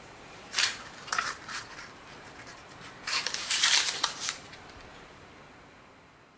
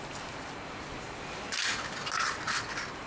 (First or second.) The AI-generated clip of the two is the first